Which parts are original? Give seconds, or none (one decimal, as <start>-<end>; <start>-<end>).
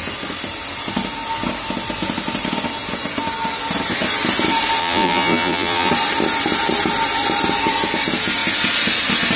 0.0-4.8; 5.9-9.4